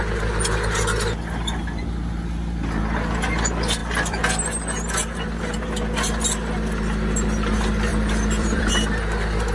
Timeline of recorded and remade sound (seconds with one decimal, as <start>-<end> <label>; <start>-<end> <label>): 0.0-3.8 recorded; 3.8-4.4 remade; 4.4-7.9 recorded; 7.9-8.7 remade; 8.7-9.5 recorded